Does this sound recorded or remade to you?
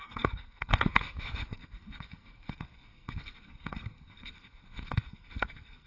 remade